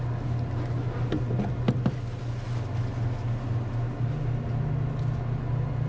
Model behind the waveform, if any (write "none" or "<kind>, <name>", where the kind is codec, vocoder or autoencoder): none